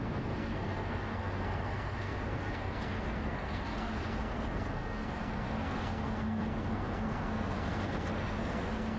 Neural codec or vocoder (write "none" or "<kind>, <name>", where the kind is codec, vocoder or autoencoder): codec, SNAC